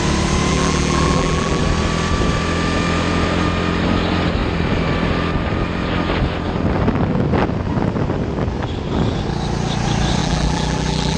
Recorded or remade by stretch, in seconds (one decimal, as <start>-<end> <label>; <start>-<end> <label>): 0.0-0.5 recorded; 0.5-1.6 remade; 1.6-10.2 recorded; 10.2-11.2 remade